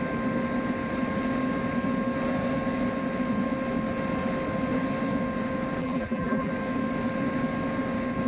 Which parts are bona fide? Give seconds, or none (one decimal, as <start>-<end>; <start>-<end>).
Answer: 0.0-5.8; 6.5-8.3